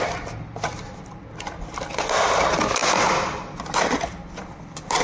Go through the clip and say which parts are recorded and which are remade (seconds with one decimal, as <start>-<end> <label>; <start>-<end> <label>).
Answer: 0.0-5.0 recorded